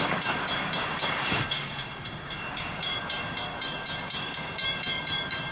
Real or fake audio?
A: fake